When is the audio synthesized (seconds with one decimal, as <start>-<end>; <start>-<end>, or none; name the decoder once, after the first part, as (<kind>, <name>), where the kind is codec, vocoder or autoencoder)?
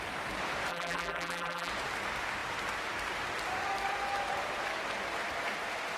0.7-1.7 (vocoder, BigVGAN v2)